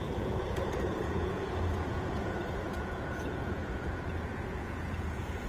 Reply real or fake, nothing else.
fake